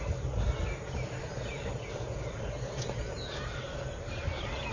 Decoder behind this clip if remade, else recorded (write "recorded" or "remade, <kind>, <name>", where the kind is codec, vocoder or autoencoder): recorded